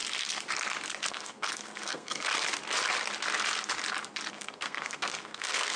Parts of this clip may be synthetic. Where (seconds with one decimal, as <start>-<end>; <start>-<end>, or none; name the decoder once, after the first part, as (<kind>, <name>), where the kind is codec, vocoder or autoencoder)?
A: 1.1-2.3 (codec, SNAC); 4.3-5.8